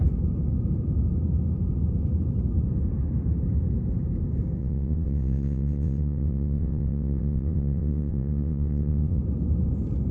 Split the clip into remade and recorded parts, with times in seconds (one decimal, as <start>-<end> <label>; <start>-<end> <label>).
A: 0.0-4.6 recorded; 4.6-9.2 remade; 9.2-10.1 recorded